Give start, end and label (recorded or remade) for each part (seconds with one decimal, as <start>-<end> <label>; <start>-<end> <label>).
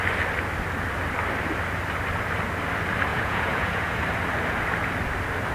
0.0-3.1 recorded; 3.1-4.0 remade; 4.0-5.5 recorded